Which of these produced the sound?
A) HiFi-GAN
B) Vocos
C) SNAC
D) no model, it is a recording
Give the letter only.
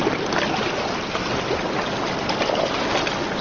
D